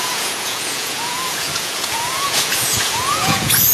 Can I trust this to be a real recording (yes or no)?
no